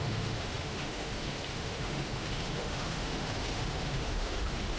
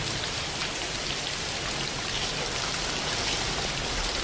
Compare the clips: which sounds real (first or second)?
second